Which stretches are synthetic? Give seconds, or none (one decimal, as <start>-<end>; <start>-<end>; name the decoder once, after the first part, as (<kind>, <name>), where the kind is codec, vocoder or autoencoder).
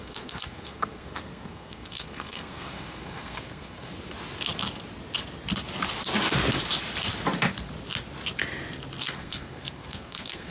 0.0-3.9 (codec, SNAC); 9.0-10.5